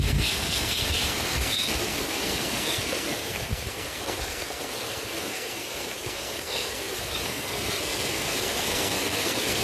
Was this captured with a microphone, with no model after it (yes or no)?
no